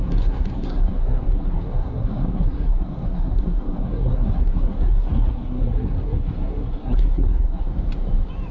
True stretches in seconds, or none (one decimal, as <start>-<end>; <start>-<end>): 7.7-8.5